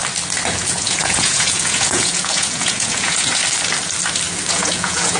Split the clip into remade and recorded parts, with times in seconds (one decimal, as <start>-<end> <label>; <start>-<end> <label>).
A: 0.0-0.6 recorded; 0.6-3.4 remade; 3.4-4.5 recorded; 4.5-5.2 remade